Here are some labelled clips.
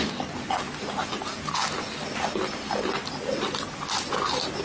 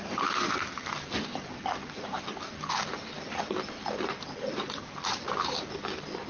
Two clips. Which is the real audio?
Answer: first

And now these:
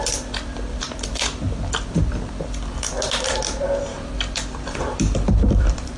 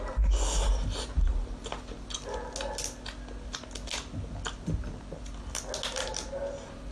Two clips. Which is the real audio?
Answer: second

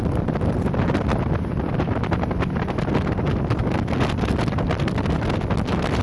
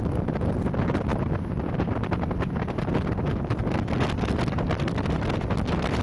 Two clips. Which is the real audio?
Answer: second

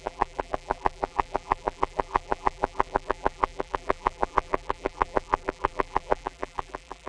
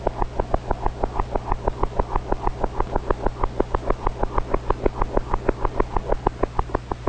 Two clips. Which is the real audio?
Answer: second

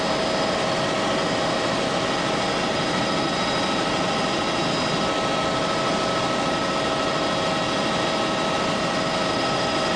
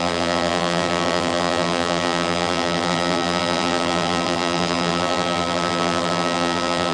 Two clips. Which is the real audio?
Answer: first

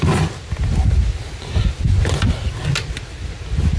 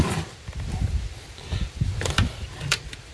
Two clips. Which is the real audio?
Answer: first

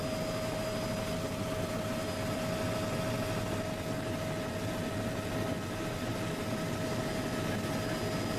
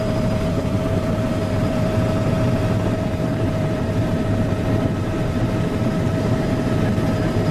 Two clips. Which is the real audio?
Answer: first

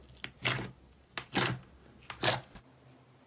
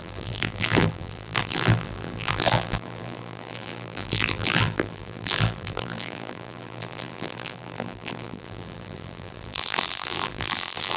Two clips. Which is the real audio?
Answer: first